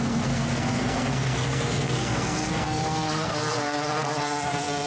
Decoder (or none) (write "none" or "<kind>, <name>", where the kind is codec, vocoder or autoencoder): codec, SNAC